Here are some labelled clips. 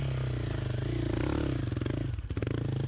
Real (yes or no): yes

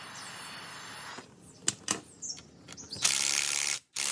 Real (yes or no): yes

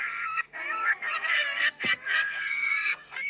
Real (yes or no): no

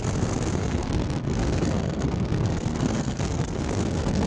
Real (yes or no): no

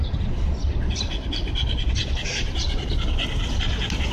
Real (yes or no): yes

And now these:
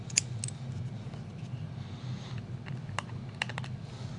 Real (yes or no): yes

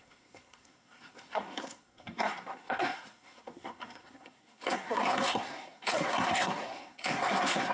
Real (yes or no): no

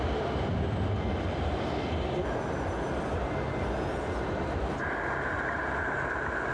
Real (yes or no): yes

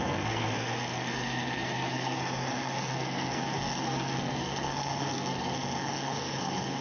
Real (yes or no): no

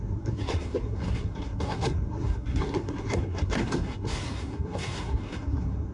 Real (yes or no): no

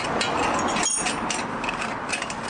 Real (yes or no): yes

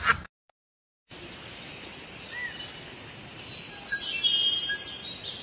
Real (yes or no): yes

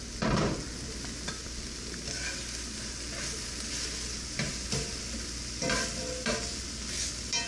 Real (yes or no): yes